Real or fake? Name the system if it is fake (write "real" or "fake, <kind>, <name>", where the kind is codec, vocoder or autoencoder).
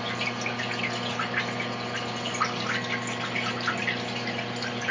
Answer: real